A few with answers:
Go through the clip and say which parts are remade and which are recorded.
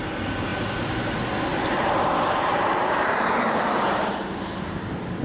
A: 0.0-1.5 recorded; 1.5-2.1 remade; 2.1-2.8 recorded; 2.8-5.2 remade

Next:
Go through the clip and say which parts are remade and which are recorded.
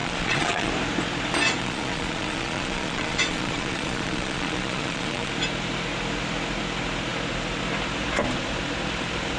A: 0.0-0.7 remade; 0.7-1.6 recorded; 1.6-5.3 remade; 5.3-9.4 recorded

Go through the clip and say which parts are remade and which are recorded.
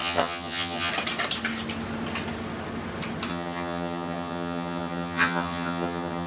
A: 0.0-0.9 remade; 0.9-3.3 recorded; 3.3-6.3 remade